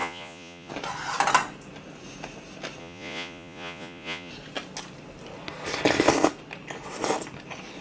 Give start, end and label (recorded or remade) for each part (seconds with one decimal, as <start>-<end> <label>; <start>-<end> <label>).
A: 0.0-0.7 remade; 0.7-2.8 recorded; 2.8-4.3 remade; 4.3-7.8 recorded